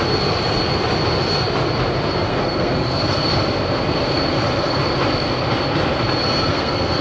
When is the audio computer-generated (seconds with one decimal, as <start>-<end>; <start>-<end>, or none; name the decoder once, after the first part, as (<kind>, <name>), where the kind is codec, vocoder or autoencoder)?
2.3-3.0 (codec, SNAC); 6.5-7.0